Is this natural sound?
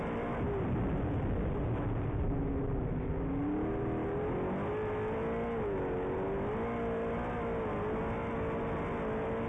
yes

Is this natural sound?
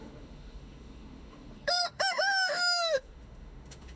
no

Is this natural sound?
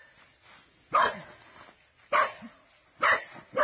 yes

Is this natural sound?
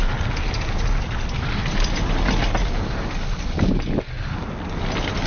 yes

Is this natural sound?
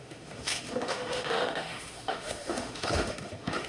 no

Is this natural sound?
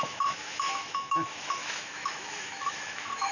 no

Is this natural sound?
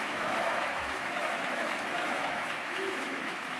no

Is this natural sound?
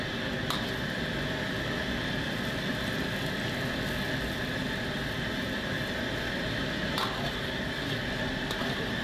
yes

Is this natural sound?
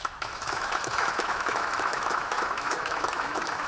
no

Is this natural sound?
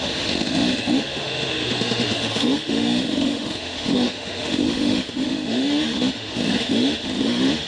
no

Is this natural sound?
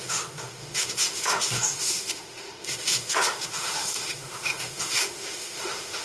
no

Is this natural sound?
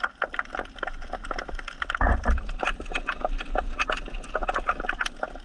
yes